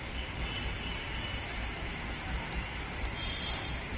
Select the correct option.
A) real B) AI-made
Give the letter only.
A